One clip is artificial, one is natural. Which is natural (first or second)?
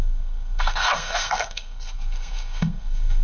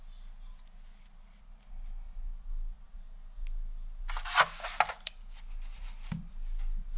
second